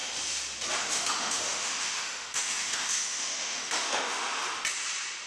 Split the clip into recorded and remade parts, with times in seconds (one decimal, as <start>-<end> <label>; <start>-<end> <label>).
0.0-0.8 recorded; 0.8-4.4 remade; 4.4-5.3 recorded